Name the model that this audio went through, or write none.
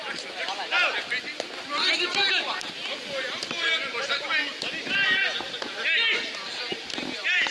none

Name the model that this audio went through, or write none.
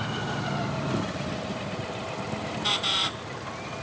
none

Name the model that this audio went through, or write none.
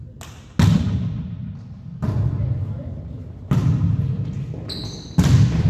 none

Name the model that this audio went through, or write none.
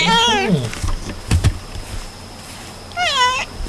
none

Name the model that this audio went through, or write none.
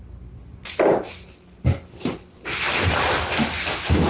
none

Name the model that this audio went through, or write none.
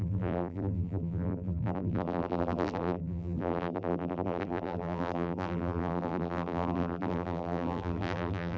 vocoder, BigVGAN v2